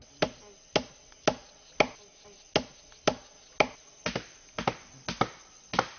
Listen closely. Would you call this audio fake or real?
real